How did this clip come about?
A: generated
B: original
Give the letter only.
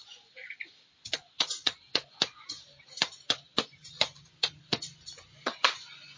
A